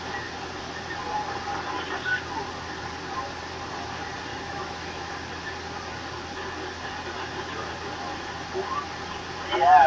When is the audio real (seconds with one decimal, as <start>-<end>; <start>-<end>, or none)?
0.0-4.3; 5.1-9.9